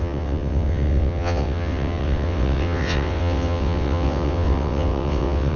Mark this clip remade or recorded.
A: remade